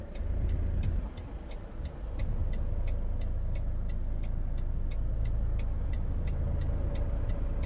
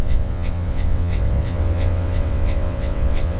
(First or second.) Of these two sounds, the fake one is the second